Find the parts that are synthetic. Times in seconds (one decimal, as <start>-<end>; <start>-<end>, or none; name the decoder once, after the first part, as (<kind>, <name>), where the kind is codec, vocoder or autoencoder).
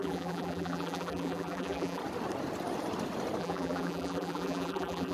0.0-2.0 (vocoder, BigVGAN v2); 3.4-5.1